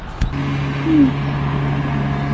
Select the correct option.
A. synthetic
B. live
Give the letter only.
B